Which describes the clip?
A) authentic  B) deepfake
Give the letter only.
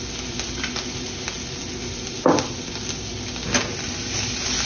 A